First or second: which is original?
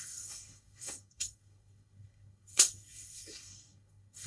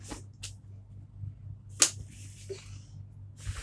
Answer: second